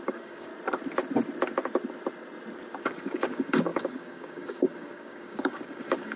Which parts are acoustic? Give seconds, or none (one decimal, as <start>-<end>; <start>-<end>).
0.5-2.8